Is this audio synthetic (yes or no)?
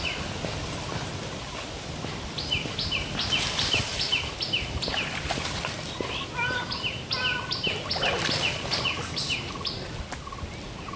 no